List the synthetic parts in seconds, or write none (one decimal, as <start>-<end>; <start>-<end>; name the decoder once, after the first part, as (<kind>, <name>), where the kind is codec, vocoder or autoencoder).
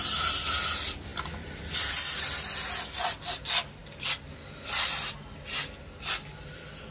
none